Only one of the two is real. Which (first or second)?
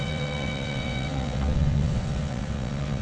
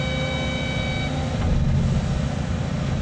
second